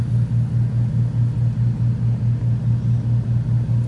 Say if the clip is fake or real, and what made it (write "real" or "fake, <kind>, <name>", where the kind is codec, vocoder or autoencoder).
real